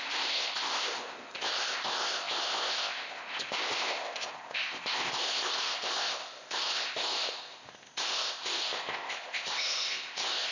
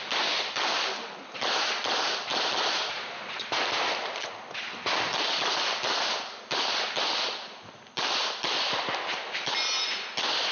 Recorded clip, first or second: second